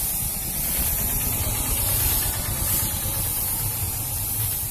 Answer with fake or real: fake